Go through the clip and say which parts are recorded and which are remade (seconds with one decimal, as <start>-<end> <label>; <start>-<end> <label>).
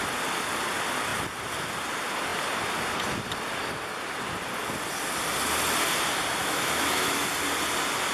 0.0-6.4 recorded; 6.4-7.3 remade; 7.3-8.1 recorded